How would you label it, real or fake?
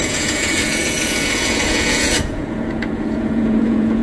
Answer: fake